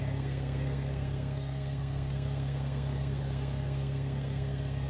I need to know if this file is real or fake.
fake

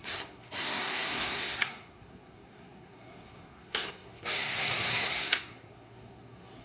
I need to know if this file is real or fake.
fake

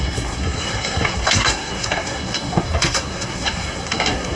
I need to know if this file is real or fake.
fake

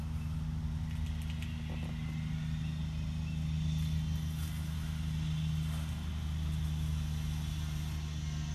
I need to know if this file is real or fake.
real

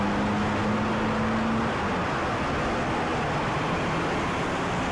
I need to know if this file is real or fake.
real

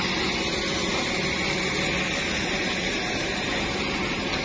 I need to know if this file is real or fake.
real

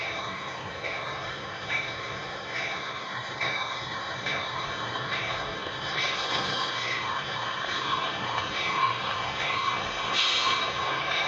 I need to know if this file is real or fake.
fake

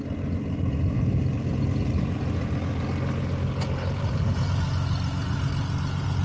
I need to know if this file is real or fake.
real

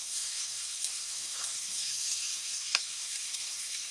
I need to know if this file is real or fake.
fake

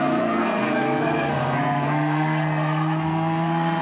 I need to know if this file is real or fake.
fake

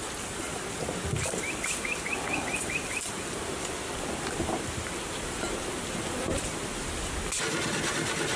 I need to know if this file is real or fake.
real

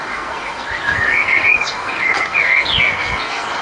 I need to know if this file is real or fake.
fake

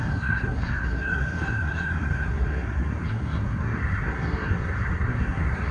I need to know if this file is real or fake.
fake